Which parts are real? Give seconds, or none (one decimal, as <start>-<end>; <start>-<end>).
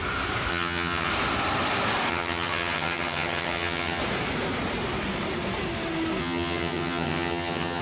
0.0-0.5; 1.1-2.1; 4.0-6.2